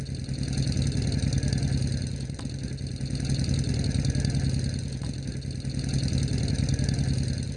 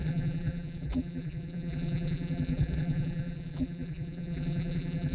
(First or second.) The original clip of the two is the first